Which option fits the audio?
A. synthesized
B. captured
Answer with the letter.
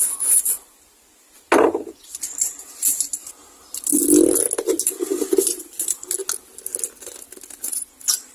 B